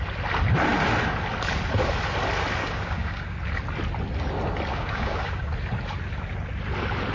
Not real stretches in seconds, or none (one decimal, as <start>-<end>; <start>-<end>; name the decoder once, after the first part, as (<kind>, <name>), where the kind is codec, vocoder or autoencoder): 2.6-3.4 (codec, DAC); 4.7-5.5